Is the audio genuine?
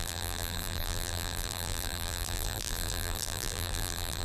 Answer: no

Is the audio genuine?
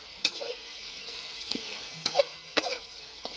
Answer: no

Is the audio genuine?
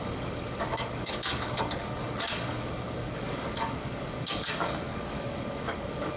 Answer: no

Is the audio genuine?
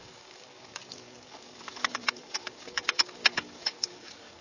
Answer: no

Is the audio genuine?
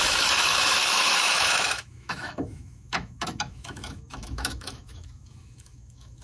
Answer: no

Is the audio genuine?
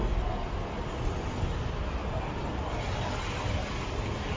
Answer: yes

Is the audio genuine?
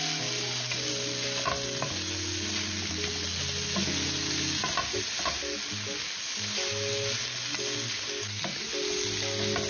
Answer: yes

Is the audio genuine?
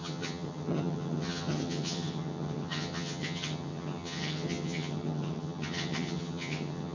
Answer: no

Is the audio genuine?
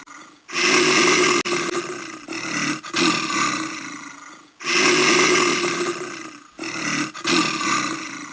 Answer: yes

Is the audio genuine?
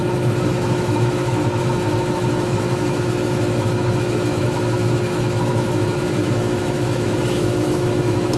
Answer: no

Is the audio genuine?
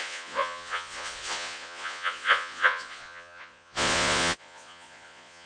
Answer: no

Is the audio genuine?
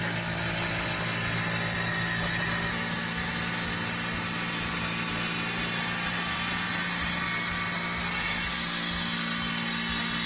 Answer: yes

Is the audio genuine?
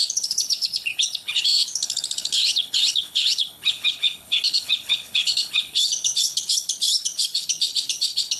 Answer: no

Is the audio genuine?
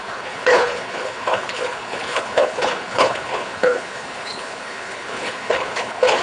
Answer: no